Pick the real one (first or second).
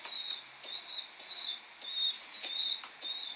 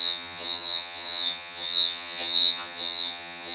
first